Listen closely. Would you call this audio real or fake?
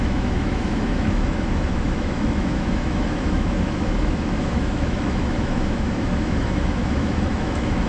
fake